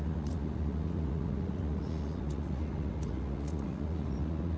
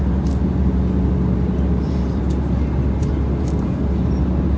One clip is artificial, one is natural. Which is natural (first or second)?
second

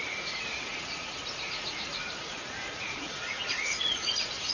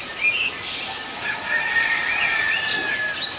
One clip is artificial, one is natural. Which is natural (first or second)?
second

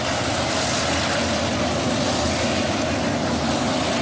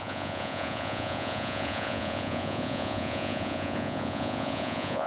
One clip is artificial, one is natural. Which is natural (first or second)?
first